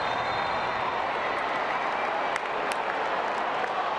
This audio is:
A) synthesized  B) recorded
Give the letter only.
B